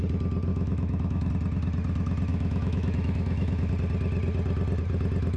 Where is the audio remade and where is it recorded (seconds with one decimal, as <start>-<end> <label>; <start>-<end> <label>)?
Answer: 0.0-0.5 recorded; 0.5-1.3 remade; 1.3-2.3 recorded; 2.3-3.7 remade; 3.7-5.4 recorded